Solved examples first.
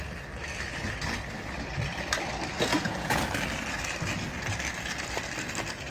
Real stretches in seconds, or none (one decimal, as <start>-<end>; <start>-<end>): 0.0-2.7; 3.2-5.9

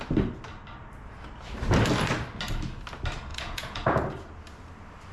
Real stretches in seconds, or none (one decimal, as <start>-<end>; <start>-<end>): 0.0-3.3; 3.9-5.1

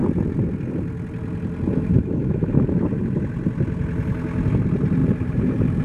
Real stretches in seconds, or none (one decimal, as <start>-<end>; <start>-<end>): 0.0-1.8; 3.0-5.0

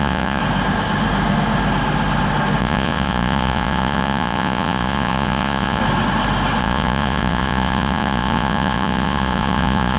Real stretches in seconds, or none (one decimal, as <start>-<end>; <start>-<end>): 0.4-2.6; 5.8-6.6

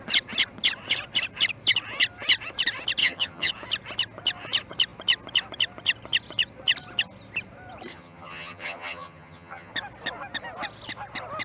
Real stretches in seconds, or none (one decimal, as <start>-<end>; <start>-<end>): 0.0-3.0; 3.5-7.9; 9.7-11.4